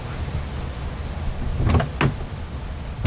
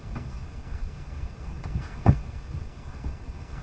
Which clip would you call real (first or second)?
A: first